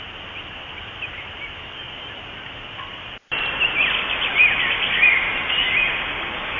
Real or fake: real